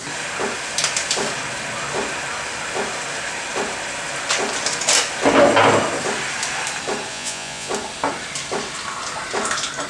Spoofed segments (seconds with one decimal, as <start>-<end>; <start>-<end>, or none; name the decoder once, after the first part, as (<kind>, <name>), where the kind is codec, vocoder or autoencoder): 7.1-7.7 (vocoder, Vocos)